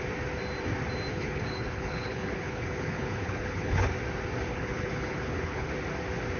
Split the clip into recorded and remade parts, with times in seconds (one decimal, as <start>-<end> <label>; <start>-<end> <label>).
0.0-1.1 recorded; 1.1-3.9 remade; 3.9-4.5 recorded; 4.5-5.7 remade; 5.7-6.4 recorded